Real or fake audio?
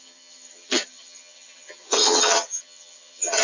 fake